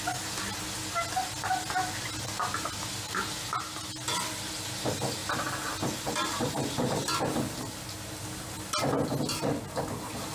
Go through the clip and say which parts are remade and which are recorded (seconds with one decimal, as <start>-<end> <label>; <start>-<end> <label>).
0.0-10.3 recorded